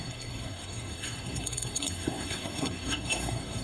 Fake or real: fake